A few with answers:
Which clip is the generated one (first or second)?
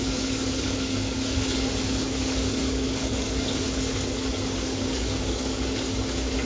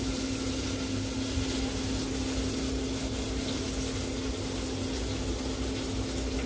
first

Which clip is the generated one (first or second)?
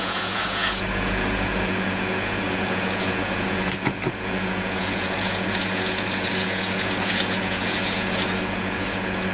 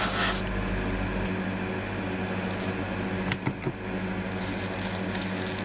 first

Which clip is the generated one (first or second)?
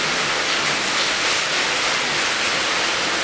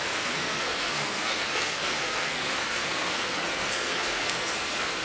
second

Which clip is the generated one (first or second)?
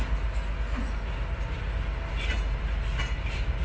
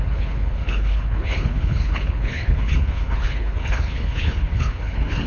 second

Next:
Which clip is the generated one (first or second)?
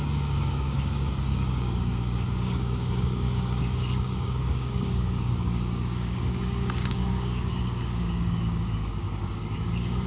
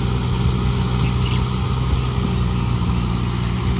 first